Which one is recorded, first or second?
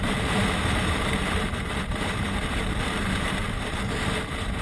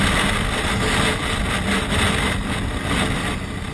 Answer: second